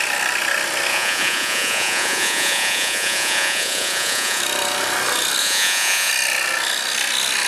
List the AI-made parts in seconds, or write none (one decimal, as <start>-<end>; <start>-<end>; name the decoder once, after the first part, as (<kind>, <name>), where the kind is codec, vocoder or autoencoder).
0.9-4.4 (vocoder, Vocos); 5.4-6.1